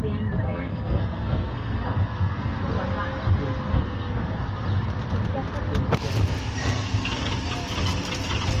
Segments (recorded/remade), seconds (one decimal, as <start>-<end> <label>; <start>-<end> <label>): 0.0-0.4 recorded; 0.4-2.6 remade; 2.6-3.7 recorded; 3.7-4.4 remade; 4.4-6.6 recorded; 6.6-7.3 remade; 7.3-8.6 recorded